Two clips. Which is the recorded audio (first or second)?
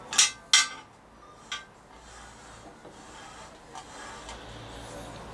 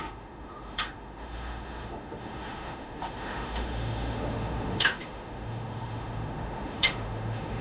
first